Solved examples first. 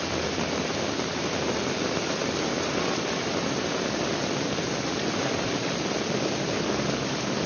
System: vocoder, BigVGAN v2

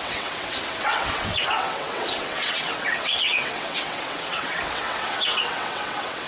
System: vocoder, WaveNeXt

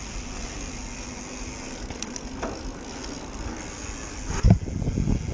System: none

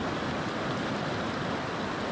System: none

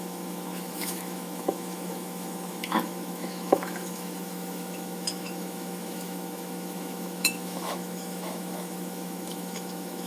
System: autoencoder, DAC-VAE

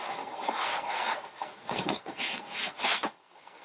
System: codec, SNAC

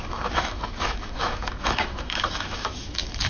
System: autoencoder, DAC-VAE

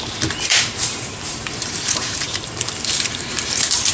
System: vocoder, BigVGAN v2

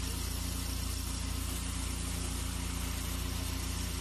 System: none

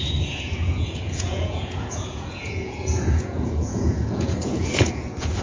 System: vocoder, Vocos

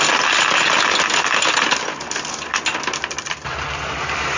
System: none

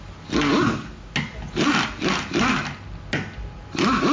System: none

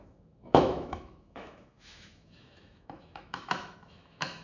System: autoencoder, DAC-VAE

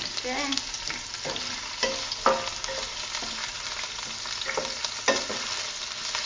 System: none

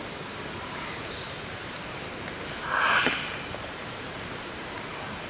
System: vocoder, BigVGAN v2